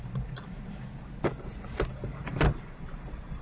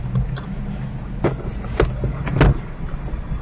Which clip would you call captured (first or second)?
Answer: second